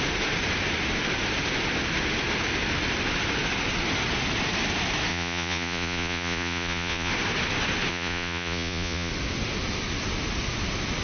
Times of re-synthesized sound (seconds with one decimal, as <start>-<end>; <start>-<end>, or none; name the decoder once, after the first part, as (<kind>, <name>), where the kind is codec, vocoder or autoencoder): 5.1-7.1 (vocoder, Vocos); 7.9-9.1